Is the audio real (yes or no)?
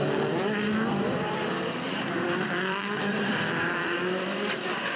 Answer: no